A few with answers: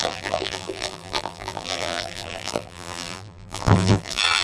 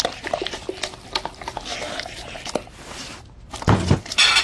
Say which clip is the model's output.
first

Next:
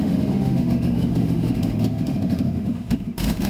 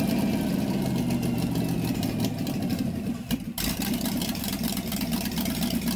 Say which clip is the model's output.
first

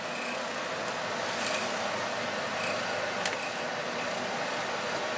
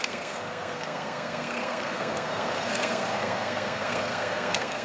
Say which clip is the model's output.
second